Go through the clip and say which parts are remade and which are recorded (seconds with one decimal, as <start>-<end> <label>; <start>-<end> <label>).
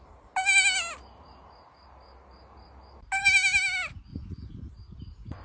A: 0.0-4.1 recorded; 4.1-4.7 remade; 4.7-5.4 recorded